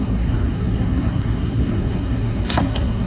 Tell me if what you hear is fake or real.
fake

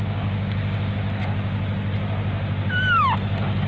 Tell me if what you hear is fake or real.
real